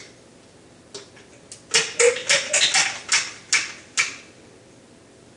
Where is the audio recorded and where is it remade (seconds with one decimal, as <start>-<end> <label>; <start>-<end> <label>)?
0.0-5.4 recorded